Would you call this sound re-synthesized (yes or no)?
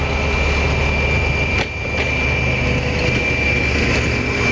no